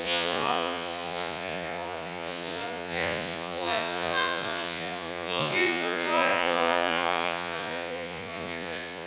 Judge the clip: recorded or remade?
remade